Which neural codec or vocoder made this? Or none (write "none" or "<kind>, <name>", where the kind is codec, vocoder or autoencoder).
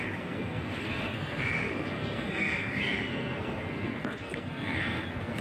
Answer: codec, SNAC